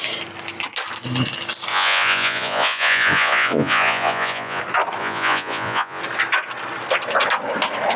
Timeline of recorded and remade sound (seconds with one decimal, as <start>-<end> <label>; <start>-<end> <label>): 0.0-1.7 recorded; 1.7-4.6 remade; 4.6-5.0 recorded; 5.0-6.0 remade; 6.0-8.0 recorded